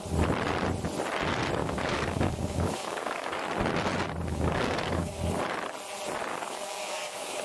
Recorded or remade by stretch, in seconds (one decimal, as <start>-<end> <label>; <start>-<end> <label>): 0.0-1.6 recorded; 1.6-3.5 remade; 3.5-4.3 recorded; 4.3-5.2 remade; 5.2-6.3 recorded; 6.3-7.4 remade